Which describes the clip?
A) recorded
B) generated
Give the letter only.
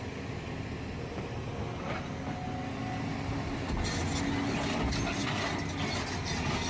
A